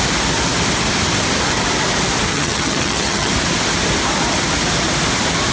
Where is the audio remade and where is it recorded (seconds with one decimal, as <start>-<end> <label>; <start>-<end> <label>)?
0.0-2.3 recorded; 2.3-3.3 remade; 3.3-5.5 recorded